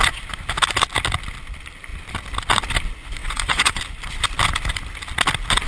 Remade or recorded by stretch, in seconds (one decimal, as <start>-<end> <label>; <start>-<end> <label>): 0.0-3.2 recorded; 3.2-3.8 remade; 3.8-5.7 recorded